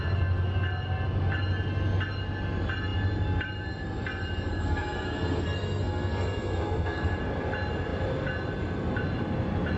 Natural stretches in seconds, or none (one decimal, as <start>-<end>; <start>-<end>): 0.0-4.5; 7.2-9.8